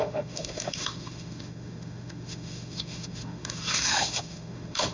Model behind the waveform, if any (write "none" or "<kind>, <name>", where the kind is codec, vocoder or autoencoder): autoencoder, DAC-VAE